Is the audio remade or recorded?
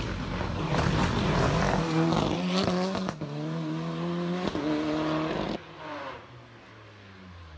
recorded